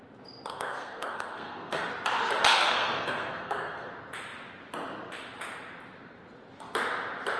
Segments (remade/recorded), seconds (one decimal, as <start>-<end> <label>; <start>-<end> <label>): 0.0-0.5 recorded; 0.5-1.9 remade; 1.9-2.5 recorded; 2.5-3.9 remade; 3.9-7.4 recorded